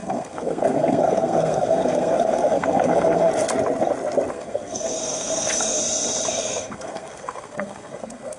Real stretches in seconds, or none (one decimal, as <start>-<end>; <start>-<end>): 3.3-4.3; 5.8-6.3